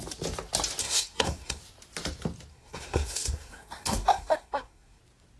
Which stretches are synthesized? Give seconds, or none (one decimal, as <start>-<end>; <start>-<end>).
0.8-1.6; 2.5-5.0